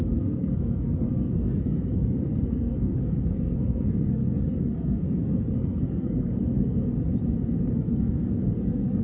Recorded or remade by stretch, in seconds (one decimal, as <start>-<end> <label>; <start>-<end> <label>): 0.0-7.0 remade; 7.0-7.6 recorded; 7.6-9.0 remade